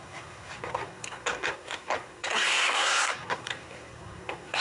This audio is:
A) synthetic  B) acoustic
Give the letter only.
A